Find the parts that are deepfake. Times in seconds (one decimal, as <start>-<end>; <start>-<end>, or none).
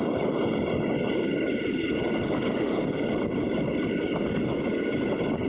4.5-5.1